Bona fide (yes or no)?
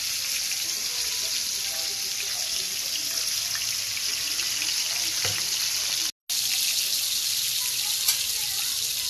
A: yes